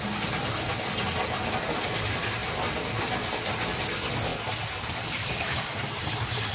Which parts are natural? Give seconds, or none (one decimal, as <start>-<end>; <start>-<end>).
0.0-6.5